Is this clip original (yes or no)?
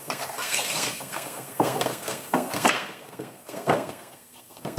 no